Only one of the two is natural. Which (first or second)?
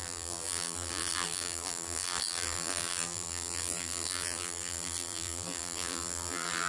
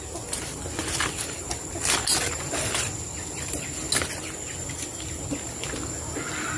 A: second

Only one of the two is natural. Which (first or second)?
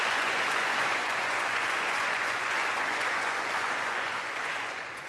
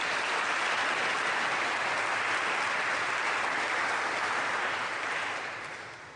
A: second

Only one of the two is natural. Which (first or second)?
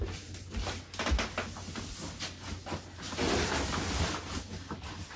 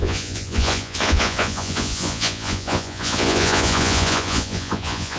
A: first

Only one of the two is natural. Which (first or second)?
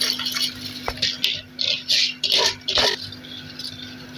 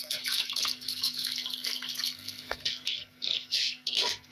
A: first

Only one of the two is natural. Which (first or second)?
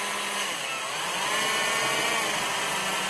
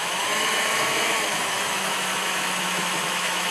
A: first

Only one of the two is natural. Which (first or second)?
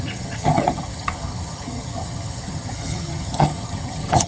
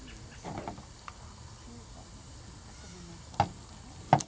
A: second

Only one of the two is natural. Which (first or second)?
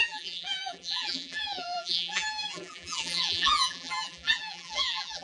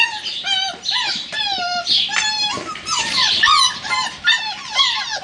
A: second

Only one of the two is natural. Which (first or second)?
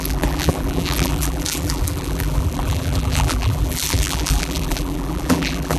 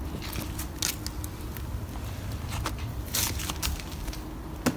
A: second